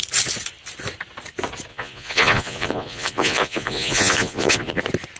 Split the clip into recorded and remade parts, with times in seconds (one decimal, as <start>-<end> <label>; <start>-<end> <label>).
0.0-1.7 recorded; 1.7-4.8 remade; 4.8-5.2 recorded